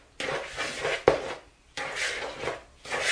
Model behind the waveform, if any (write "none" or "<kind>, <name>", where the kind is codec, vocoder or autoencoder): none